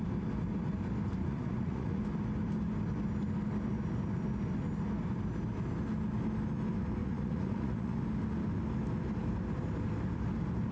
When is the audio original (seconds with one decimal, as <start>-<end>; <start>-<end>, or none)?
0.0-1.2; 2.0-7.0; 8.0-10.7